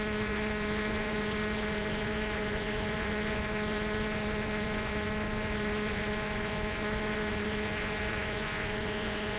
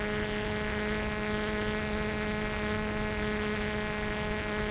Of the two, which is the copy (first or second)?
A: first